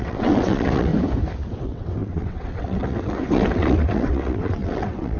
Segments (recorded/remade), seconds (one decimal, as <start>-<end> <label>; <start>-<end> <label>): 0.0-0.9 remade; 0.9-1.5 recorded; 1.5-5.2 remade